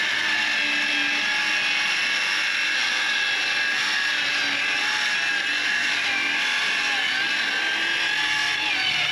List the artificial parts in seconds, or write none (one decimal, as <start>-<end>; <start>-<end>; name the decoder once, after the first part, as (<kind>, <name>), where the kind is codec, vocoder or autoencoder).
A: none